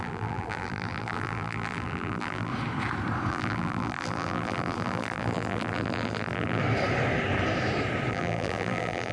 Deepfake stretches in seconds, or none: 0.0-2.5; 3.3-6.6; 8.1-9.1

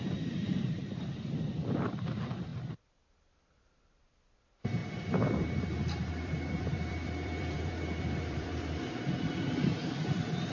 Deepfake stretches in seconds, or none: 4.8-9.1; 9.7-10.5

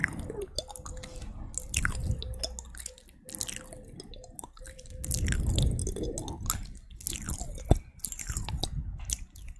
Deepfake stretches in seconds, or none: none

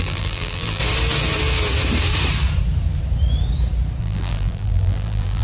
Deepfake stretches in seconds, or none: 0.0-0.8; 4.0-5.4